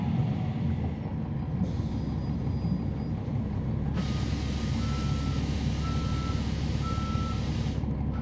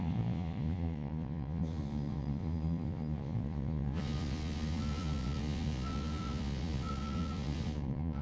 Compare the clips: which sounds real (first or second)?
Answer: first